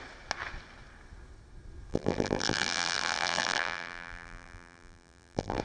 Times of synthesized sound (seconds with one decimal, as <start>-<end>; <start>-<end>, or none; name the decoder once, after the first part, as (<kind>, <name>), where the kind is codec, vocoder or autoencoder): 1.9-5.6 (vocoder, BigVGAN v2)